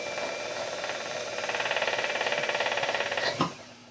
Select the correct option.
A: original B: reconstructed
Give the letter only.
B